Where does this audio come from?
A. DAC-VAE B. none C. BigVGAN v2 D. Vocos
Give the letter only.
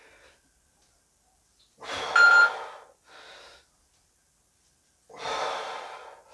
B